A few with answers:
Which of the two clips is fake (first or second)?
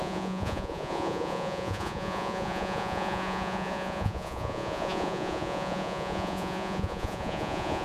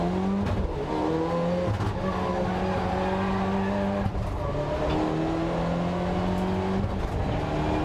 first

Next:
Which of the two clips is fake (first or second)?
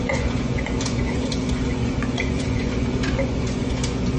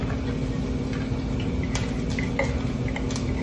first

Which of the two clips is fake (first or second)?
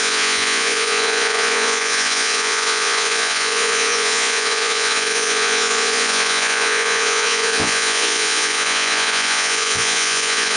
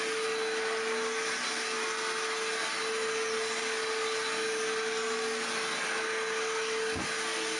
first